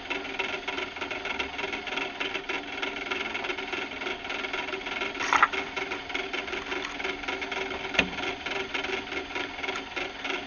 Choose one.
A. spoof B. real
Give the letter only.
B